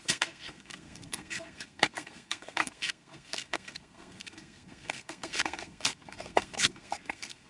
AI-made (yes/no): yes